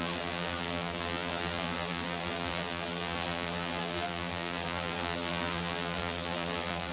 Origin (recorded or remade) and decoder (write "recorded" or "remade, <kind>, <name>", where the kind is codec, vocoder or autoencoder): remade, vocoder, BigVGAN v2